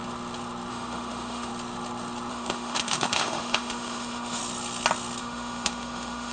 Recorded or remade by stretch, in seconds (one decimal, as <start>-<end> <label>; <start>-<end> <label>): 0.0-0.7 recorded; 0.7-1.5 remade; 1.5-2.3 recorded; 2.3-4.4 remade; 4.4-5.2 recorded; 5.2-6.3 remade